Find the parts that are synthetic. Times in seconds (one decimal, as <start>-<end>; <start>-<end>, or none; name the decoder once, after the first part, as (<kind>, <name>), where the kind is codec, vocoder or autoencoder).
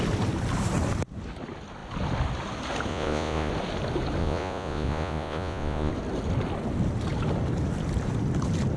2.9-3.5 (vocoder, Vocos); 4.2-5.9